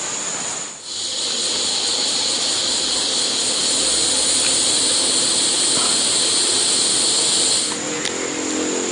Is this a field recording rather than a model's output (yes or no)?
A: yes